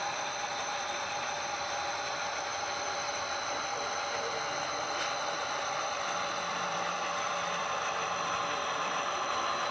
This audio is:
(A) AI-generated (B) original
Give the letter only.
A